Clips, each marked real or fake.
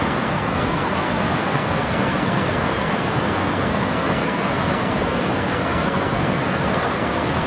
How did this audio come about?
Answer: fake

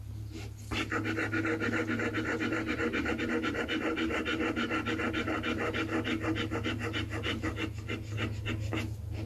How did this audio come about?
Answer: real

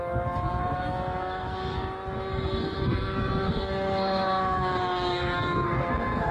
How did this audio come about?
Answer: fake